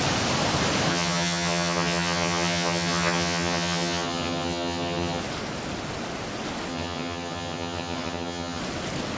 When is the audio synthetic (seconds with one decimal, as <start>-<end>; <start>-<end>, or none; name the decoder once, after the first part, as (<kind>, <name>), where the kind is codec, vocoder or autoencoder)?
0.9-5.2 (vocoder, HiFi-GAN); 6.7-8.6